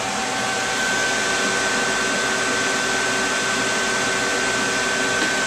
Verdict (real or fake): real